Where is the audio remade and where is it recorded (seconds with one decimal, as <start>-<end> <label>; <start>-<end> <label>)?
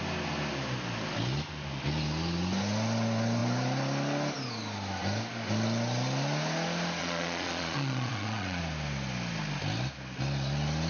0.0-7.0 recorded; 7.0-8.6 remade; 8.6-10.9 recorded